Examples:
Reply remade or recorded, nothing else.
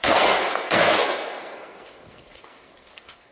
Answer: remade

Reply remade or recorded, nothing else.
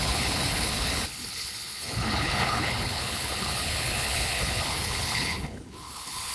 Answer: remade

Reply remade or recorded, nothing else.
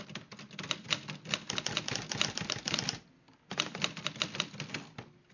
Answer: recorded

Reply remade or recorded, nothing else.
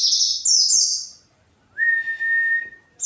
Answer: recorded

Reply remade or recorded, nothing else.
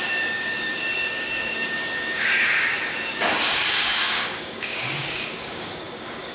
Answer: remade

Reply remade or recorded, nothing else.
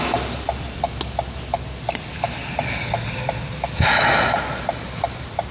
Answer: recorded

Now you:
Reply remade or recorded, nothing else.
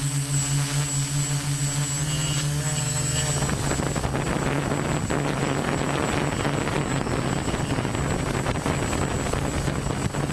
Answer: recorded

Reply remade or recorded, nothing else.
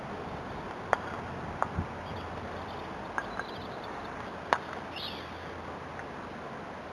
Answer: recorded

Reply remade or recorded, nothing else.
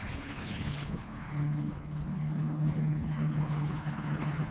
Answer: remade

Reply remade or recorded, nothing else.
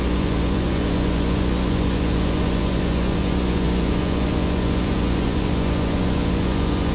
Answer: remade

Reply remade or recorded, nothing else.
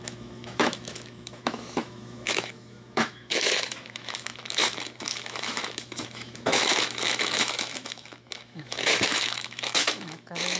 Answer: remade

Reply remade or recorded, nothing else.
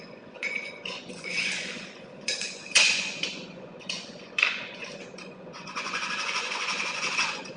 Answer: remade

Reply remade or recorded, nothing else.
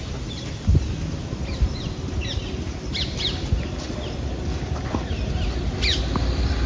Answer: recorded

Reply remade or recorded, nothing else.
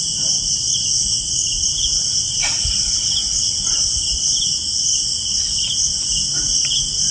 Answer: recorded